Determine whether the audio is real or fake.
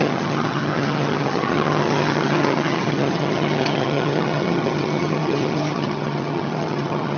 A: fake